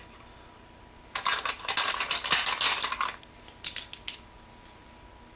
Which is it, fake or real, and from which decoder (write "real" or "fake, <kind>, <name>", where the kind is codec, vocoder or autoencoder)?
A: real